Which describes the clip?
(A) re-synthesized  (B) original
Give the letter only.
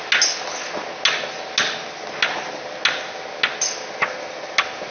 B